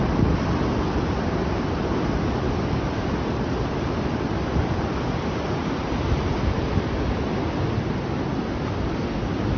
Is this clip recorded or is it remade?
recorded